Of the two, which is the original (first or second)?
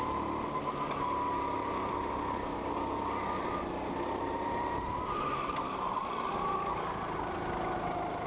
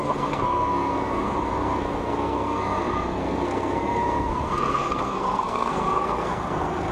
first